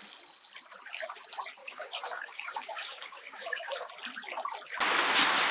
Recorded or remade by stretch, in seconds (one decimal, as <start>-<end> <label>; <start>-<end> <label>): 0.0-1.6 recorded; 1.6-3.9 remade; 3.9-5.5 recorded